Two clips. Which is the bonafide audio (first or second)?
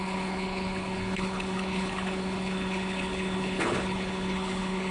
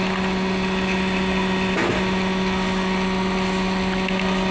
second